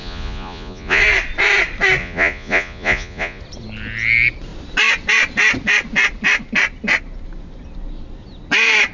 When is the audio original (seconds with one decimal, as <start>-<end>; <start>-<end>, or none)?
1.0-2.0; 3.4-8.9